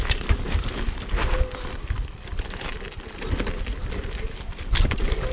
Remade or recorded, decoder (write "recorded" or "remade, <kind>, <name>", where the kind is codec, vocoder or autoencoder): recorded